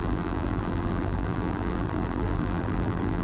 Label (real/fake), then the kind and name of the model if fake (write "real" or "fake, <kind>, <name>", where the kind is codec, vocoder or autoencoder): fake, vocoder, BigVGAN v2